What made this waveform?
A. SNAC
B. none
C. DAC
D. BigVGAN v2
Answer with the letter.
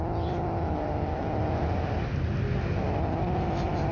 B